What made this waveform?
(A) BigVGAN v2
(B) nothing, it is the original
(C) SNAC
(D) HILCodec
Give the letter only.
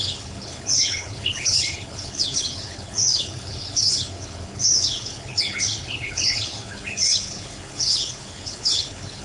D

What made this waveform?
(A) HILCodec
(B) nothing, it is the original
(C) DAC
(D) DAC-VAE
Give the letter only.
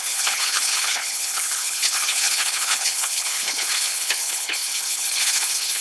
A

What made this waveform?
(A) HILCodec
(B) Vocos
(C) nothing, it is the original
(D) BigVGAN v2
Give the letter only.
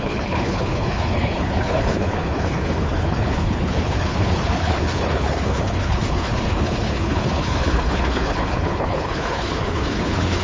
A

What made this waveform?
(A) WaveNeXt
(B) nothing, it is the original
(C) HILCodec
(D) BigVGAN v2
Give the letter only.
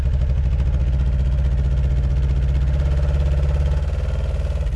B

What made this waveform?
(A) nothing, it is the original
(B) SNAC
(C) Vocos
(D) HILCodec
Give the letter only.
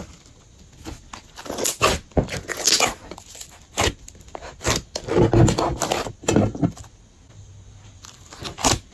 A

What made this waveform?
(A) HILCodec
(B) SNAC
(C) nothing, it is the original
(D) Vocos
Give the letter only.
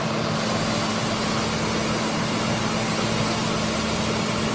C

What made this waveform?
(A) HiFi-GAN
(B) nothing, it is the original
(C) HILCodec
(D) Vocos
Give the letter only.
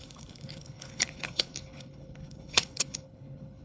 C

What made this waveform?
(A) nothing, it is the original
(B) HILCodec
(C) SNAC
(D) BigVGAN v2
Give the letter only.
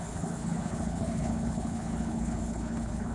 B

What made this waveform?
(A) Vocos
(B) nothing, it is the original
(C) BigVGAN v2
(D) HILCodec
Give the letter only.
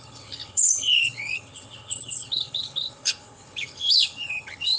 D